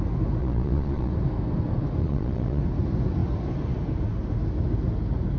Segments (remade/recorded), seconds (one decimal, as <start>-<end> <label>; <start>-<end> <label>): 0.0-0.4 recorded; 0.4-1.1 remade; 1.1-2.0 recorded; 2.0-2.6 remade; 2.6-5.4 recorded